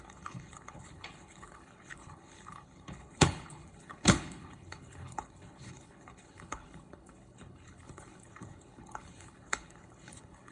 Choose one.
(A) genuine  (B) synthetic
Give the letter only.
B